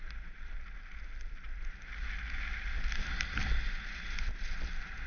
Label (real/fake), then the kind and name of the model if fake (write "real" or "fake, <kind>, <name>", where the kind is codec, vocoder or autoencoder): real